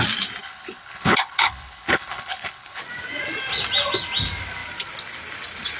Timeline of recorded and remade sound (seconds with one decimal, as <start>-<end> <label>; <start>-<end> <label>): 0.0-0.4 recorded; 0.4-2.8 remade; 2.8-5.8 recorded